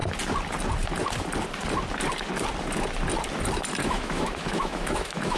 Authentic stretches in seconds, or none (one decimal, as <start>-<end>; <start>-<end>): 0.0-3.8